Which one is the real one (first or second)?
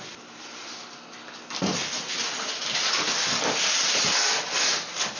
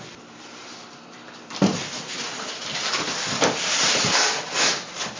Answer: first